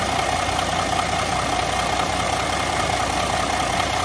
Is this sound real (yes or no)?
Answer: yes